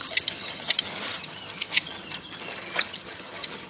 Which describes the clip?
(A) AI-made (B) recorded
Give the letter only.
A